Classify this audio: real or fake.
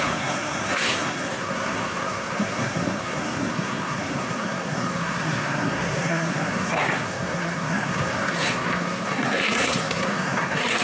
fake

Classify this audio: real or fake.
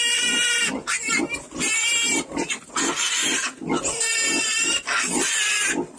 real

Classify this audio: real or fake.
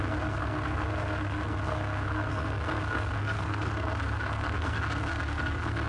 fake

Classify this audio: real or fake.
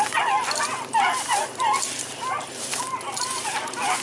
real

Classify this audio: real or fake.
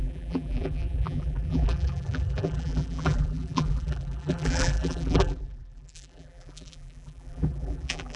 fake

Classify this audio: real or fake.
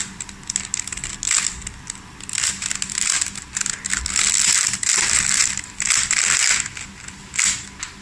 real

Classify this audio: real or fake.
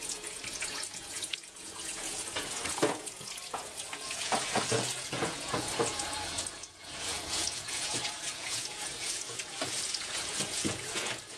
fake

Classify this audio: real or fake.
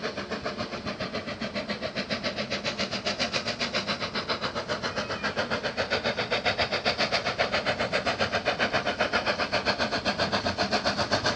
real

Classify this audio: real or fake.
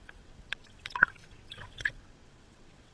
fake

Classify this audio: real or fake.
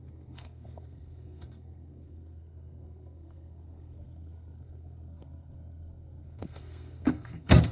fake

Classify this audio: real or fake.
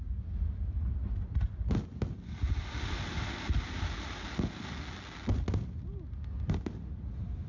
real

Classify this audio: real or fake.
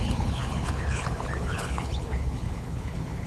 fake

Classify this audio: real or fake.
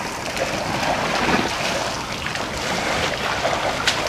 real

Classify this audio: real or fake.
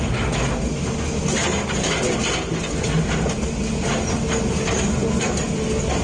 real